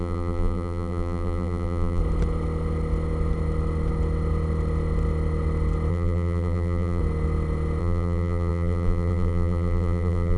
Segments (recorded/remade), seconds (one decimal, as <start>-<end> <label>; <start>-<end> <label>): 0.0-2.0 remade; 2.0-5.9 recorded; 5.9-7.0 remade; 7.0-7.8 recorded; 7.8-10.4 remade